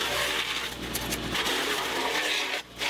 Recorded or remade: recorded